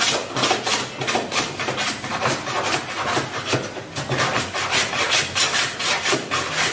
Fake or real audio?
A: real